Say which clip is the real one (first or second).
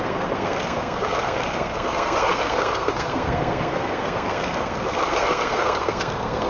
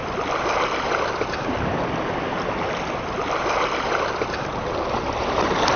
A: second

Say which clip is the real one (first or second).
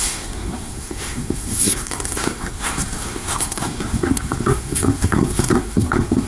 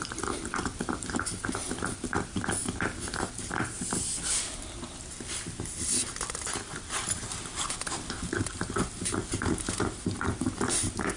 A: second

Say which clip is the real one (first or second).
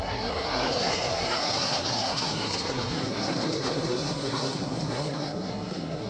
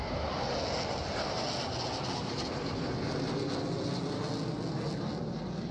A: second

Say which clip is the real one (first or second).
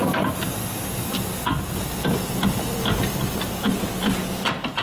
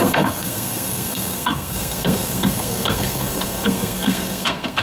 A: first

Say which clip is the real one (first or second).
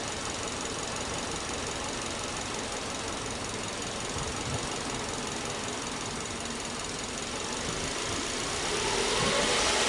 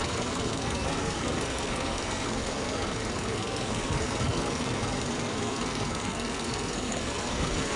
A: first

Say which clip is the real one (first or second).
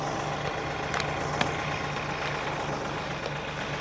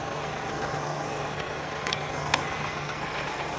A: first